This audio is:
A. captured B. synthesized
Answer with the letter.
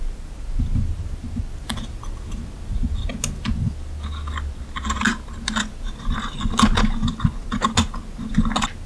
A